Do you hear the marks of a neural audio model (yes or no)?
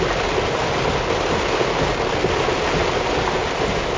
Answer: no